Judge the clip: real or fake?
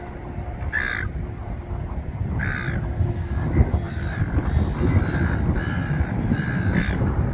real